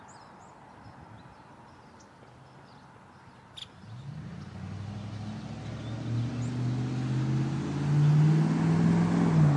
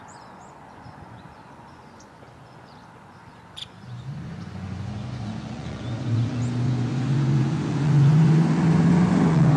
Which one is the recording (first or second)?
first